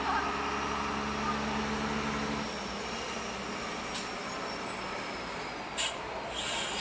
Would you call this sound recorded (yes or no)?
yes